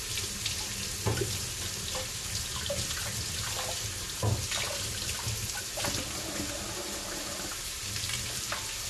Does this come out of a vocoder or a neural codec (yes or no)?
no